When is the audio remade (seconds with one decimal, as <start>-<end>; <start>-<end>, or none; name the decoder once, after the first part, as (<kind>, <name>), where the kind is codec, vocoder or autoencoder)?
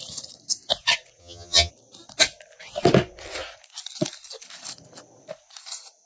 1.2-1.7 (vocoder, HiFi-GAN)